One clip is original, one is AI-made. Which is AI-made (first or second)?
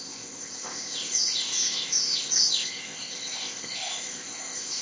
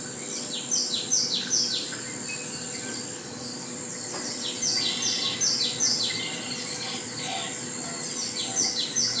first